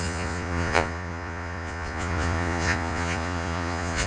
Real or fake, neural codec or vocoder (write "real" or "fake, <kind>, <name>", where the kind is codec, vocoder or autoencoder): fake, vocoder, Vocos